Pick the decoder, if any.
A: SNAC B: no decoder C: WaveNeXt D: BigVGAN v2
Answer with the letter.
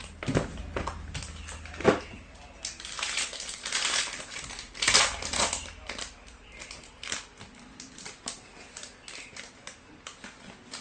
B